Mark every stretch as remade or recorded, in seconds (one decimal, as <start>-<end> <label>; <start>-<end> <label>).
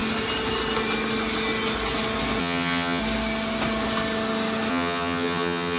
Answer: 0.0-2.4 recorded; 2.4-3.0 remade; 3.0-4.7 recorded; 4.7-5.8 remade